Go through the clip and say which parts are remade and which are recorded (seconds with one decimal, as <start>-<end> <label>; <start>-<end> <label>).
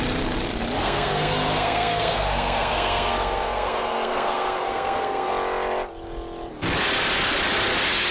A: 0.0-0.8 recorded; 0.8-5.3 remade; 5.3-8.1 recorded